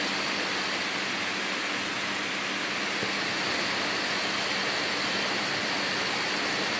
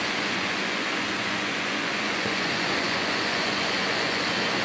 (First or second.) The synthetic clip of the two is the second